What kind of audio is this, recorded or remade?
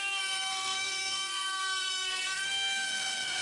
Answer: remade